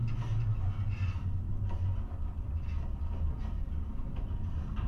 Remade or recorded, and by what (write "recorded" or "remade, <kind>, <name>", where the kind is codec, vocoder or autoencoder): recorded